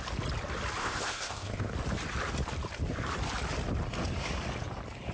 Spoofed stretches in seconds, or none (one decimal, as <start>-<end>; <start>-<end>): 0.8-1.7